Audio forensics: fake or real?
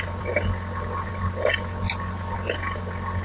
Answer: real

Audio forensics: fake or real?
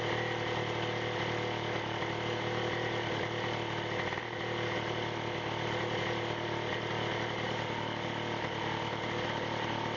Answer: real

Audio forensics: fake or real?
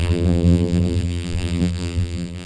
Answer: fake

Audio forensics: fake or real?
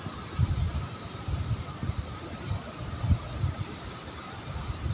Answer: real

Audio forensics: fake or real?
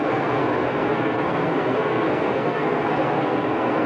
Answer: fake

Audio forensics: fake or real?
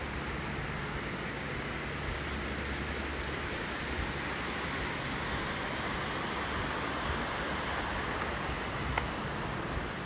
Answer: real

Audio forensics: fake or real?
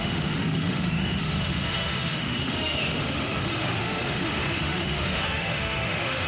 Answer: fake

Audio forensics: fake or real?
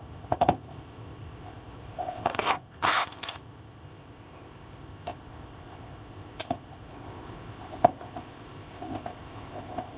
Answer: fake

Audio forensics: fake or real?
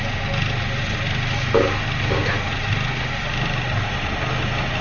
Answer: real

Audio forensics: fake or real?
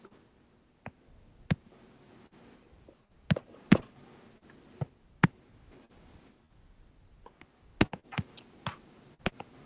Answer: real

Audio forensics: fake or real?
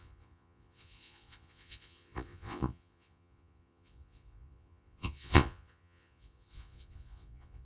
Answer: fake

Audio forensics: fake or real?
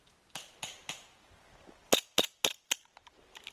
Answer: real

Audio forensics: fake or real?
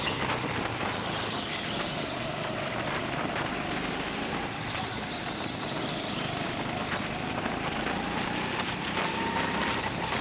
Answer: fake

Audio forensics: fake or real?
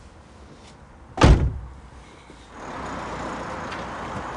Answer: real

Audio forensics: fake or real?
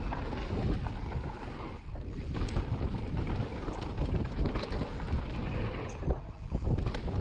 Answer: real